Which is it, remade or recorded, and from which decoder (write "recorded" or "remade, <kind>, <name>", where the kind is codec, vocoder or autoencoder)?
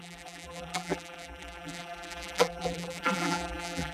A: remade, vocoder, BigVGAN v2